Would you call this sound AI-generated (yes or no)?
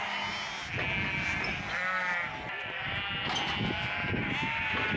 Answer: no